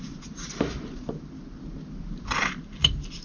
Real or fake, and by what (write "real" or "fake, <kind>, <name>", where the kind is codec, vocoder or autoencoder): real